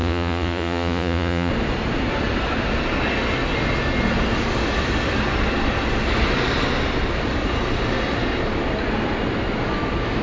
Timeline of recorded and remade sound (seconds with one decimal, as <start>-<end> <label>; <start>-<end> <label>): 0.0-1.5 remade; 1.5-10.2 recorded